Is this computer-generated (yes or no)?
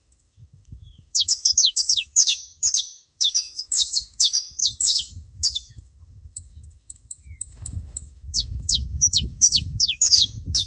yes